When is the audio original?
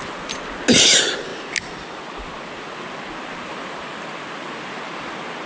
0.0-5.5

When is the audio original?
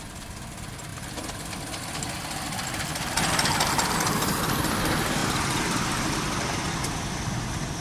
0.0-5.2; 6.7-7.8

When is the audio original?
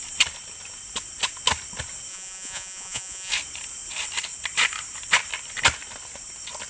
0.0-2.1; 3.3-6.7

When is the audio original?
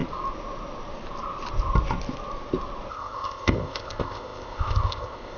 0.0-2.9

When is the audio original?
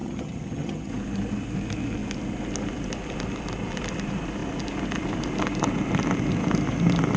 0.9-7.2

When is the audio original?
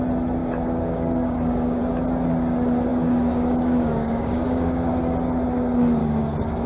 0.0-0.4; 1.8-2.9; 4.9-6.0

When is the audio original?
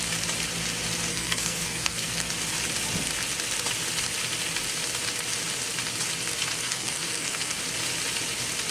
0.0-1.1; 2.3-6.6; 7.6-8.7